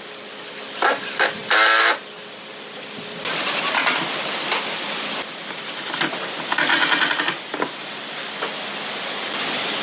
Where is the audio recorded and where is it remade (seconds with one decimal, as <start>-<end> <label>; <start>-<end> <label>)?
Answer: 0.0-9.8 recorded